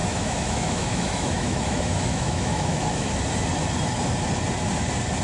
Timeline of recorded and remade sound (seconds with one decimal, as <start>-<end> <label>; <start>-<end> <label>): 0.0-3.1 remade; 3.1-5.2 recorded